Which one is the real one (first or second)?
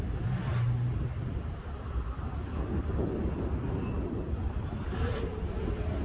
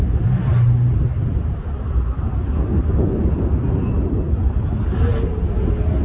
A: second